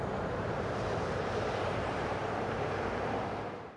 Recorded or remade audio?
remade